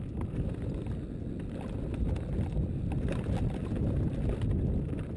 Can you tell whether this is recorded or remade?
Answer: recorded